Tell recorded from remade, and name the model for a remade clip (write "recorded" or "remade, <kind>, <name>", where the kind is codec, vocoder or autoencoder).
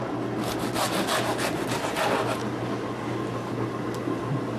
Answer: recorded